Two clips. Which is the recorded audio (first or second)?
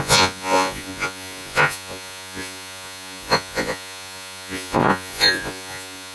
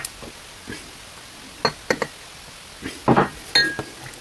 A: second